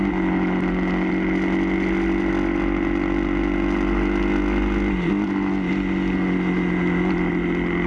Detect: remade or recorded recorded